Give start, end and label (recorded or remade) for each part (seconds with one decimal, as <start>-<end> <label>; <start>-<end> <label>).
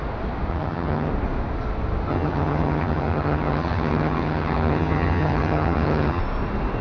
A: 0.0-0.5 recorded; 0.5-1.1 remade; 1.1-2.1 recorded; 2.1-6.2 remade; 6.2-6.8 recorded